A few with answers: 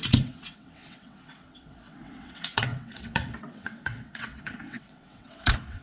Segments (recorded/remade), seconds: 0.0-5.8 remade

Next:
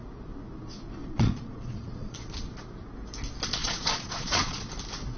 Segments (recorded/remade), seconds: 0.0-1.0 recorded; 1.0-2.2 remade; 2.2-3.6 recorded; 3.6-4.7 remade; 4.7-5.2 recorded

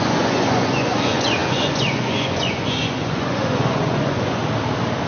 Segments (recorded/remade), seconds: 0.0-4.4 remade; 4.4-5.1 recorded

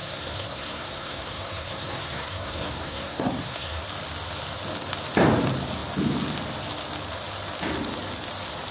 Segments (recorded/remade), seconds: 0.0-3.8 remade; 3.8-8.7 recorded

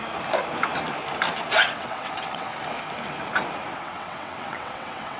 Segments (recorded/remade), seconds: 0.0-1.5 recorded; 1.5-2.5 remade; 2.5-3.7 recorded; 3.7-5.2 remade